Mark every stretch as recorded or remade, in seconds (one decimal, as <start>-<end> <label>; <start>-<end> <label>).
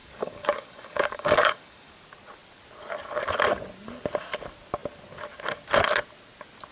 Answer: 0.0-2.0 remade; 2.0-6.7 recorded